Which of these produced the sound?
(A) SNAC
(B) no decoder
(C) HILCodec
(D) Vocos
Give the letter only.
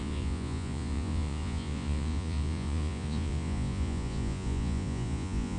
D